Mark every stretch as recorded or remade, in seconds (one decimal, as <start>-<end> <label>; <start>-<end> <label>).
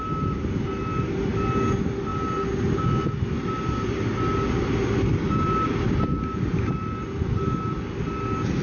0.0-8.6 recorded